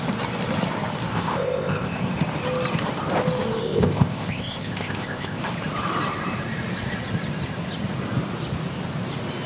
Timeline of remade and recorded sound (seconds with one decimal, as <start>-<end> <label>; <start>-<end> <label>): 0.0-1.1 recorded; 1.1-2.1 remade; 2.1-3.6 recorded; 3.6-5.4 remade; 5.4-9.5 recorded